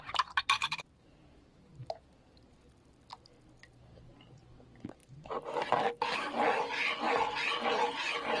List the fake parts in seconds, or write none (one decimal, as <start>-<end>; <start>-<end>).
0.6-1.6; 5.0-5.7